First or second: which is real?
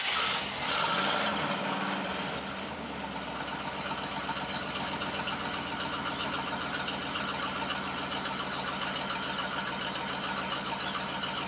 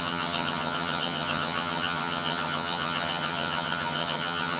first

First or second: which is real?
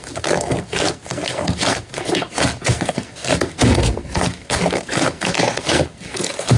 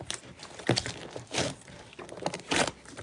second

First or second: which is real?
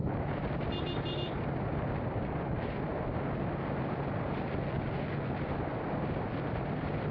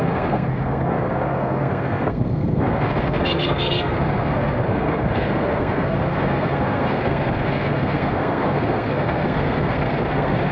first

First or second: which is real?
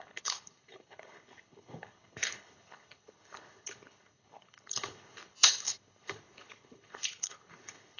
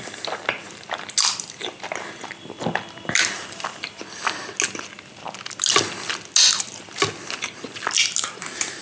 second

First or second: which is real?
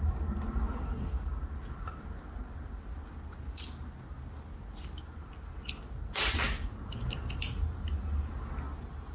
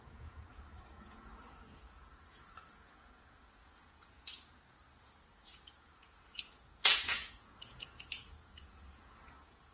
first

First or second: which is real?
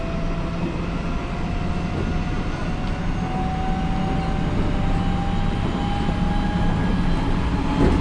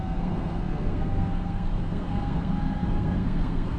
first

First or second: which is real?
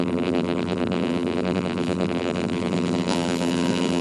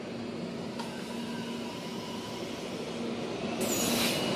second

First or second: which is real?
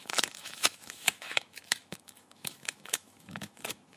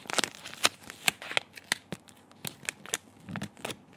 second